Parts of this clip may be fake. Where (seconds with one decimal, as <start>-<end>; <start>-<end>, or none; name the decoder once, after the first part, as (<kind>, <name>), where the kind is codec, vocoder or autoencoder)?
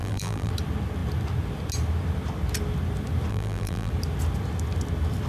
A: 0.0-0.5 (vocoder, BigVGAN v2); 3.3-3.9